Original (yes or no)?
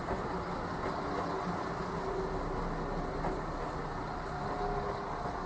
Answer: yes